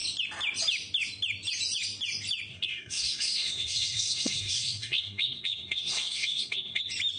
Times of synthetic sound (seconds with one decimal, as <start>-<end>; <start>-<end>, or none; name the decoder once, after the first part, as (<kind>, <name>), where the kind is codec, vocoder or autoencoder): 2.5-6.8 (codec, SNAC)